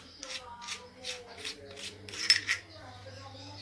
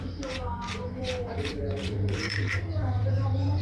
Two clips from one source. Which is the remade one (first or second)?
second